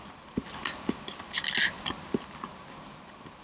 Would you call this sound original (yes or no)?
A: yes